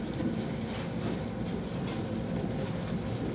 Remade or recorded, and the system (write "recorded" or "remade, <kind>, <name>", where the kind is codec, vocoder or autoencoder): recorded